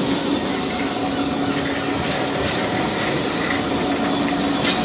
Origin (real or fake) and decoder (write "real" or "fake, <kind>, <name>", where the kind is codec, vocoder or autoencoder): real